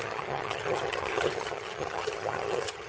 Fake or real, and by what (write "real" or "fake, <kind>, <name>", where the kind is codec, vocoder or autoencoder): fake, vocoder, HiFi-GAN